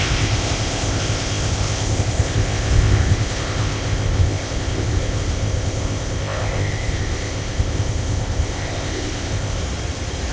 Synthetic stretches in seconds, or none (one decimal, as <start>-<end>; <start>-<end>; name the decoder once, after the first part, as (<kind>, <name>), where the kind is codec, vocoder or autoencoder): 0.0-9.6 (codec, ZipCodec)